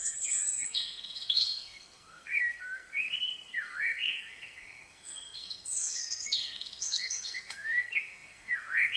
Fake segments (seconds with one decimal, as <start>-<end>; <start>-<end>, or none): 0.0-9.0

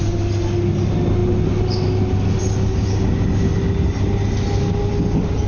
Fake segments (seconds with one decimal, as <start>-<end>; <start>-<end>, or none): none

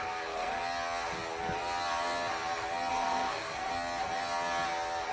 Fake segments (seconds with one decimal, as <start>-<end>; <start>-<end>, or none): 0.0-0.6; 2.9-3.7

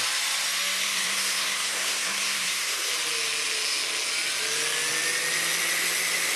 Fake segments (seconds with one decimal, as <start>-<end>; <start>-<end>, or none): 0.8-2.9